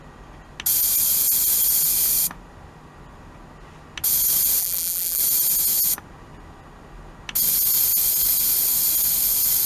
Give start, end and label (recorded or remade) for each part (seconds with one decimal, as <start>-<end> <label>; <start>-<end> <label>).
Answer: 0.0-4.6 recorded; 4.6-5.2 remade; 5.2-9.7 recorded